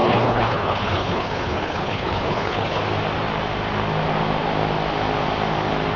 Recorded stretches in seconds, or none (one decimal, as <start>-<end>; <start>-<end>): 2.8-6.0